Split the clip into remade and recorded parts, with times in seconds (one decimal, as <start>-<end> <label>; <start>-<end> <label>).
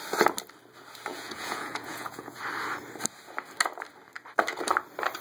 0.0-1.1 recorded; 1.1-2.4 remade; 2.4-5.2 recorded